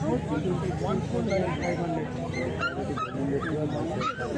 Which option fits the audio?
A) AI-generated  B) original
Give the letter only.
B